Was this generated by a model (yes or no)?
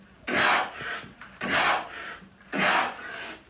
no